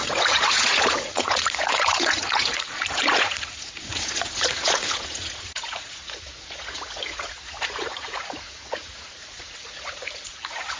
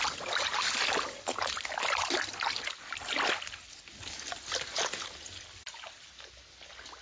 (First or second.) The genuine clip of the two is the second